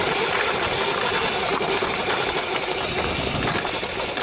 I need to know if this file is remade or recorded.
recorded